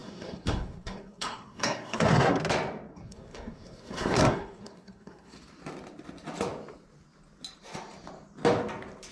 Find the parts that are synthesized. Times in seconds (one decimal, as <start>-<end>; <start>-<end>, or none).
0.0-2.4; 2.9-5.4